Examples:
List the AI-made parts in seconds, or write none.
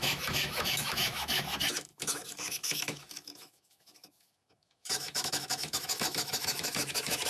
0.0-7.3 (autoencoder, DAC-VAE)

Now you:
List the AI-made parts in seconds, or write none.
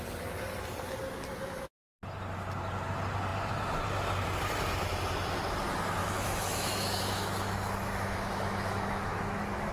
1.4-2.0 (autoencoder, DAC-VAE); 6.0-9.7